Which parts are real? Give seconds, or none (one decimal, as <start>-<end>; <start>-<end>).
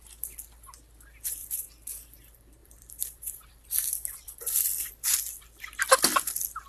0.0-1.4; 1.9-2.6; 4.9-6.7